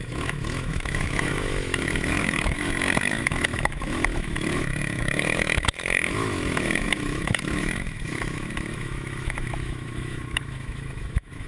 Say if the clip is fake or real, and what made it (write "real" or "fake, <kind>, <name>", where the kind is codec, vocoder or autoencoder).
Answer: fake, autoencoder, DAC-VAE